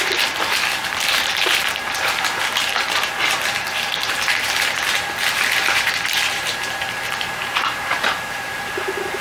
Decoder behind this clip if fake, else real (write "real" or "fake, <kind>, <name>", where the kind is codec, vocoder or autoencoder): fake, vocoder, BigVGAN v2